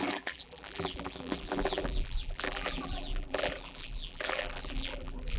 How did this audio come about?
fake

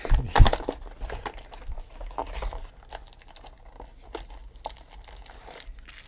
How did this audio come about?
real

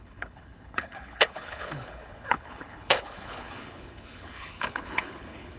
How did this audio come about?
fake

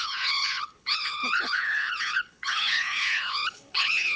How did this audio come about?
fake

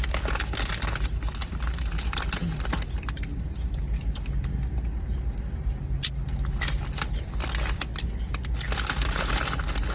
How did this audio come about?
real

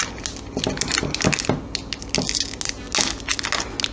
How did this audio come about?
real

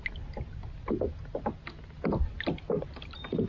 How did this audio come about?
real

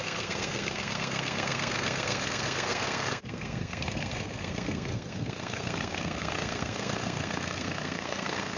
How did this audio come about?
fake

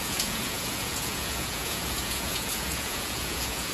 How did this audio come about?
fake